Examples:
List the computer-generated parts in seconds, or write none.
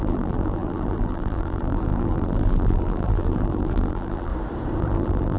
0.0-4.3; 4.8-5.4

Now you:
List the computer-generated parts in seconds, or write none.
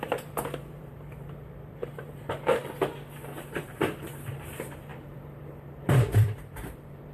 0.0-2.6; 3.5-7.1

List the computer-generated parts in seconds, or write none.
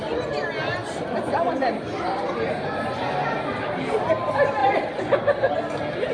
0.8-2.9; 4.6-5.5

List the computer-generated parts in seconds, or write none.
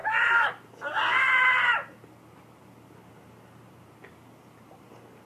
none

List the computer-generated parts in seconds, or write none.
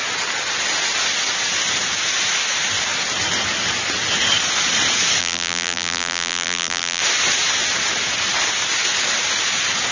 5.2-7.0